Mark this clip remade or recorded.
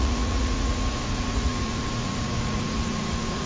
remade